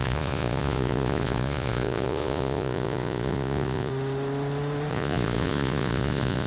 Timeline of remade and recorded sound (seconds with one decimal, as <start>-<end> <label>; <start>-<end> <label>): 0.0-3.9 remade; 3.9-4.9 recorded; 4.9-6.5 remade